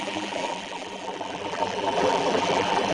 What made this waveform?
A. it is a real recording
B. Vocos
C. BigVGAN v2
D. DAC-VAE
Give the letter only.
C